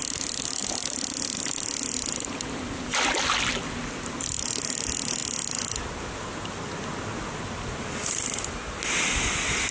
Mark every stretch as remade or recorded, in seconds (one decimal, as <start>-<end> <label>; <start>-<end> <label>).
0.0-9.7 recorded

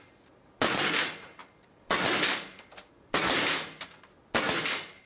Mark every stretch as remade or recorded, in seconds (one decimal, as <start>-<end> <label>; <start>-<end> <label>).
0.0-5.1 recorded

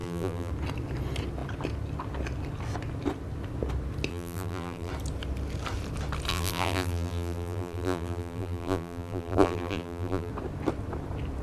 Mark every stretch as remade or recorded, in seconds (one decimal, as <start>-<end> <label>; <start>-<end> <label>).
0.0-0.5 remade; 0.5-4.1 recorded; 4.1-4.9 remade; 4.9-6.3 recorded; 6.3-10.3 remade; 10.3-11.4 recorded

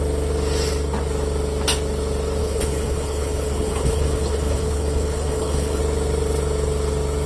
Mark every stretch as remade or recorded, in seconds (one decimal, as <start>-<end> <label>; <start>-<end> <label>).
0.0-2.4 recorded; 2.4-5.8 remade; 5.8-7.3 recorded

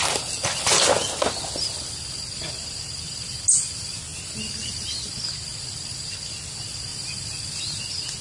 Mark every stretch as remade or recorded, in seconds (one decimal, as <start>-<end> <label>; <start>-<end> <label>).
0.0-8.2 recorded